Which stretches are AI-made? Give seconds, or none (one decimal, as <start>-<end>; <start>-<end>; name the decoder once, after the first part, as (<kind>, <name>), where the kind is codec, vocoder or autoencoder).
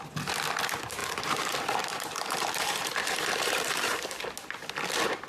1.0-4.2 (vocoder, BigVGAN v2)